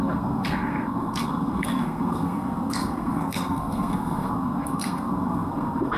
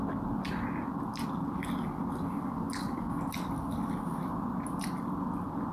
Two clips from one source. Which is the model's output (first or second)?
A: first